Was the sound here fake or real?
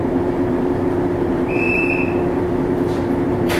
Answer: fake